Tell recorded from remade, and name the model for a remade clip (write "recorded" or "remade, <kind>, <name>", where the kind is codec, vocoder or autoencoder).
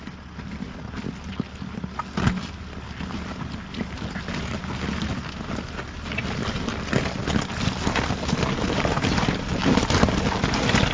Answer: recorded